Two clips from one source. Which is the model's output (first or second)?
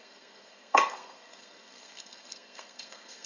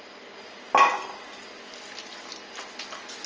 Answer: first